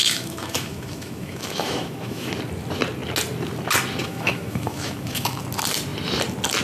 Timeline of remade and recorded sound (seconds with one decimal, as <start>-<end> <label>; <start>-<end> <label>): 0.0-2.3 remade; 2.3-4.0 recorded; 4.0-5.4 remade; 5.4-6.6 recorded

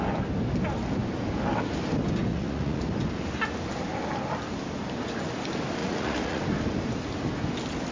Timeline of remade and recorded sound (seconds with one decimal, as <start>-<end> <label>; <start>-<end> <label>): 0.0-2.3 recorded; 2.3-2.8 remade; 2.8-5.8 recorded; 5.8-6.4 remade; 6.4-7.9 recorded

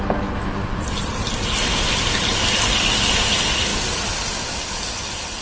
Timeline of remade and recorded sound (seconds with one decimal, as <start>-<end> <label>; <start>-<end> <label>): 0.0-5.4 recorded

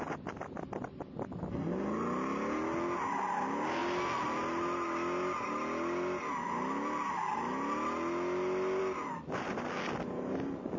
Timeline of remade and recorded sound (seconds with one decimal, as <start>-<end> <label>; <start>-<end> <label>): 0.0-10.8 recorded

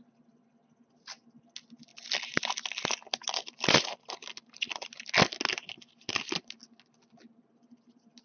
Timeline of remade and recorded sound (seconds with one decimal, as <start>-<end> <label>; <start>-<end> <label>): 0.0-8.2 recorded

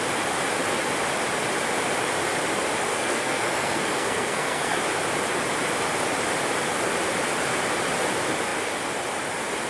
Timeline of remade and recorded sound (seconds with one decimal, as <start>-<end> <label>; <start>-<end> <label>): 0.0-2.9 recorded; 2.9-4.8 remade; 4.8-9.7 recorded

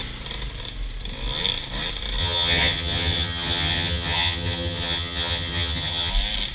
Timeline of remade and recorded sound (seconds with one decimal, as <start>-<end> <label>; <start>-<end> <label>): 0.0-2.2 recorded; 2.2-6.1 remade; 6.1-6.5 recorded

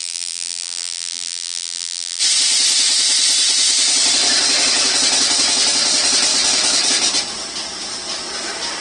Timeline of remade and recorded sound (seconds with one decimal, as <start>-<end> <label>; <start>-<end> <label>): 0.0-2.2 remade; 2.2-8.8 recorded